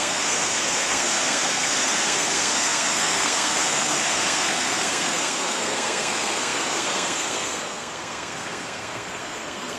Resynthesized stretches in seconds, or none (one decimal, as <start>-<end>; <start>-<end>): 0.0-9.8